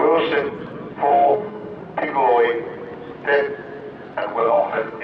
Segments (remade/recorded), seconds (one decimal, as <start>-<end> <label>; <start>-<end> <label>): 0.0-1.1 recorded; 1.1-1.8 remade; 1.8-4.4 recorded; 4.4-5.0 remade